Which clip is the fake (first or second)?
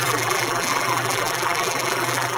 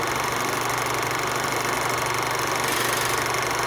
first